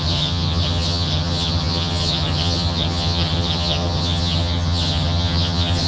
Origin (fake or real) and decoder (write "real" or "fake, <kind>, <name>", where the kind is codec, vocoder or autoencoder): fake, vocoder, HiFi-GAN